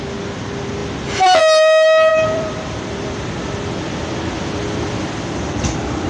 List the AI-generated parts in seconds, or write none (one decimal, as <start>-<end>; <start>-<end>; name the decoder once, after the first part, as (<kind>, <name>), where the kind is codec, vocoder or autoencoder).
2.1-6.1 (vocoder, BigVGAN v2)